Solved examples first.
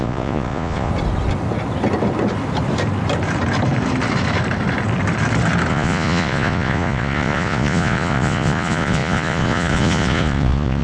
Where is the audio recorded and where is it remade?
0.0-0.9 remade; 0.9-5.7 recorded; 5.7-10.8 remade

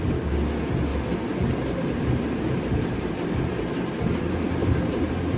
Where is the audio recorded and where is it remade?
0.0-0.9 recorded; 0.9-3.1 remade; 3.1-4.6 recorded; 4.6-5.4 remade

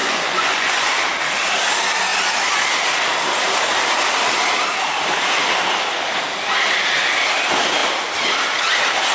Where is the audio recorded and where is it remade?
0.0-0.9 remade; 0.9-9.1 recorded

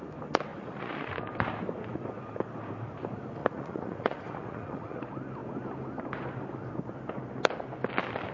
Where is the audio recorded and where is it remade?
0.0-0.5 recorded; 0.5-1.2 remade; 1.2-3.4 recorded; 3.4-5.0 remade; 5.0-8.3 recorded

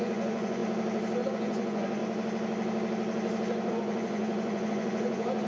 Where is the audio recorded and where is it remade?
0.0-0.6 remade; 0.6-1.3 recorded; 1.3-2.0 remade; 2.0-3.7 recorded; 3.7-5.5 remade